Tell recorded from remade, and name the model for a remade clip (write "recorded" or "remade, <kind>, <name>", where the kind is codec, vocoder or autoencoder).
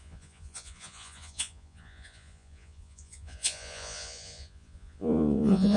remade, vocoder, Vocos